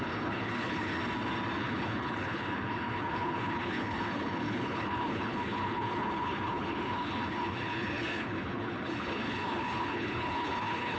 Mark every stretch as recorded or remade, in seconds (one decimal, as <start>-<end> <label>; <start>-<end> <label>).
0.0-1.0 remade; 1.0-1.6 recorded; 1.6-11.0 remade